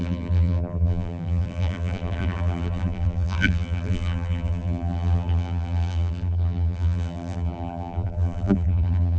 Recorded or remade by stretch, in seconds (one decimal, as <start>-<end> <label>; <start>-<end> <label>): 0.0-9.2 remade